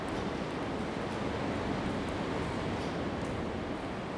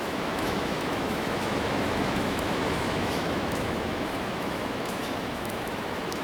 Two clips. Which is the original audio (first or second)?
first